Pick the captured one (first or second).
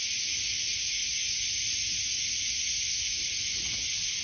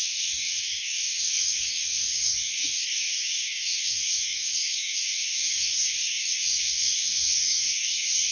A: first